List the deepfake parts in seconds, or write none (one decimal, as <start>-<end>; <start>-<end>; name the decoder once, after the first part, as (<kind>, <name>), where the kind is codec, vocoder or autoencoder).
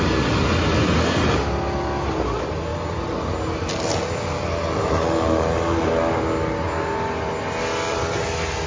none